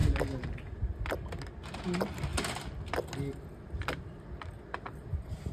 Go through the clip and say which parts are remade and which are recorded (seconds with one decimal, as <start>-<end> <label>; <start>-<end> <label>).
0.0-5.5 recorded

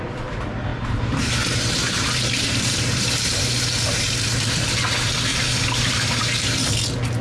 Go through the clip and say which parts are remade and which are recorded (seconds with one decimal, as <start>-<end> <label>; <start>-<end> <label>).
0.0-0.7 recorded; 0.7-4.6 remade; 4.6-5.3 recorded; 5.3-6.2 remade; 6.2-7.2 recorded